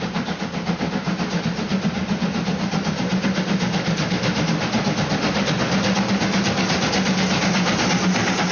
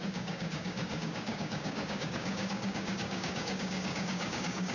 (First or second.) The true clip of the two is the first